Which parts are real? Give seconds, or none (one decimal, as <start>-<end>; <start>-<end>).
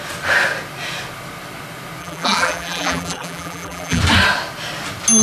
0.0-2.0; 4.0-5.2